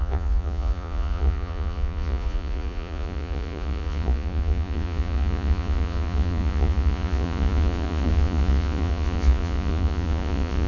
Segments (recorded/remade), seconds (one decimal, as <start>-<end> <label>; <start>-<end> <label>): 0.0-10.7 remade